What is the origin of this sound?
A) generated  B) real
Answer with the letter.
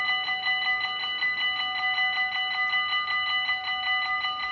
B